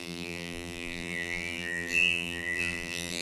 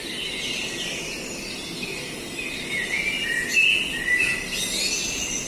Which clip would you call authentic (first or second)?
second